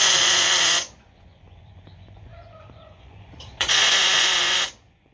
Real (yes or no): no